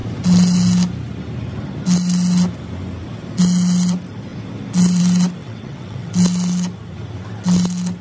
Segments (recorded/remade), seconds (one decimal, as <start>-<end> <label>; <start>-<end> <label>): 0.0-5.4 recorded; 5.4-6.1 remade; 6.1-8.0 recorded